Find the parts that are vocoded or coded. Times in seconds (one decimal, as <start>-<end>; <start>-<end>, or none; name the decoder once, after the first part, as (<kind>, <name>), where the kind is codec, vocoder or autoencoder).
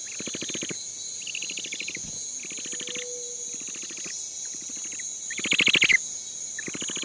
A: none